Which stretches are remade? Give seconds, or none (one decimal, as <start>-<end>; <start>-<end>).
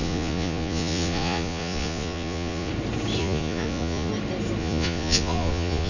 0.0-2.7; 3.2-4.1; 4.6-5.9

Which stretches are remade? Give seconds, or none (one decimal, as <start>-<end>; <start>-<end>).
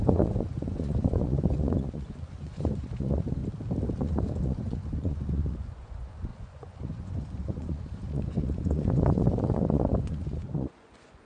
0.0-3.4; 4.0-11.3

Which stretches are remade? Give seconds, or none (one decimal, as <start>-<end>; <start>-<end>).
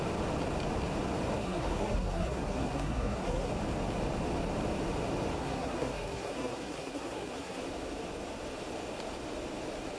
1.4-3.5; 5.4-7.6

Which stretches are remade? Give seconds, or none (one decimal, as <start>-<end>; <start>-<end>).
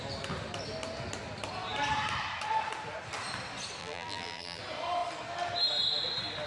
3.8-4.6